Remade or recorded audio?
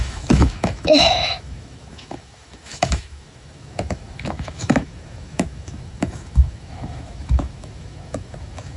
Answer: remade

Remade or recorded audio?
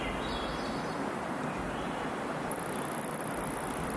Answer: recorded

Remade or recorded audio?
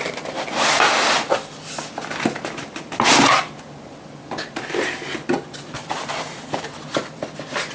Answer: recorded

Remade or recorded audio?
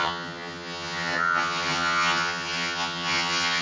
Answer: remade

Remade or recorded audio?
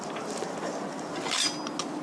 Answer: recorded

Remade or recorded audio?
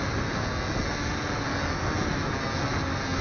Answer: recorded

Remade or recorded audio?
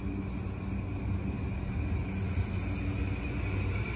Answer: recorded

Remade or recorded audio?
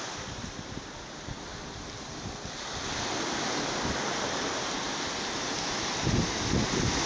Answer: recorded